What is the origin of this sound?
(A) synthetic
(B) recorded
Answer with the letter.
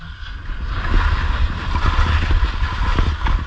B